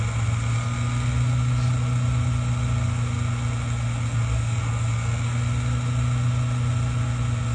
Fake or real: real